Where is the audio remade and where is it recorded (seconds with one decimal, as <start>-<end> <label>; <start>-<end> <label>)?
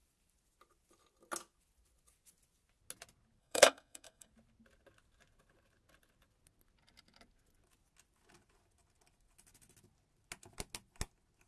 0.0-3.4 recorded; 3.4-4.3 remade; 4.3-11.5 recorded